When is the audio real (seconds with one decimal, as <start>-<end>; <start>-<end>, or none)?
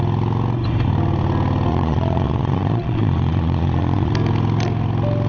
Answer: 0.0-1.7; 4.1-5.3